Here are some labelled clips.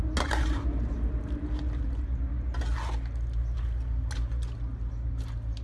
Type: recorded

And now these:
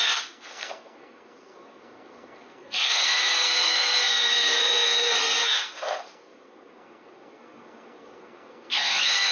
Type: remade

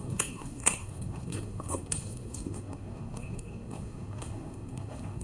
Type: remade